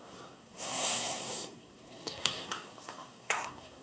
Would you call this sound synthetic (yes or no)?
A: yes